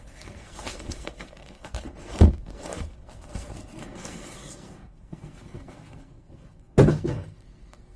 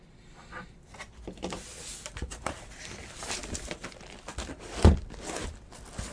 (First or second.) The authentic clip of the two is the second